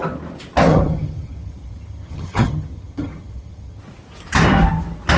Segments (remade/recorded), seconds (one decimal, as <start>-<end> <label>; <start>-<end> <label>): 0.0-0.7 recorded; 0.7-3.8 remade; 3.8-5.2 recorded